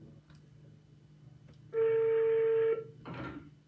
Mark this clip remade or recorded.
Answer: recorded